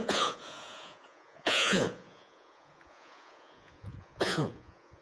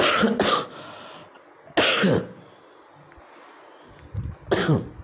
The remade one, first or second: first